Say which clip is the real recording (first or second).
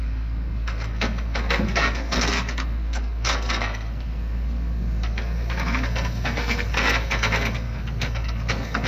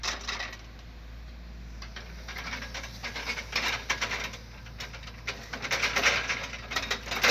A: second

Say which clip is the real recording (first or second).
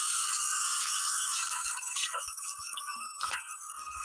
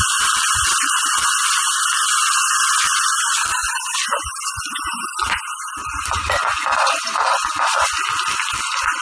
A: second